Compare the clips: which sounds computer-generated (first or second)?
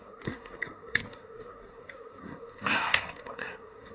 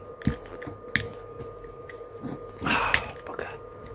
first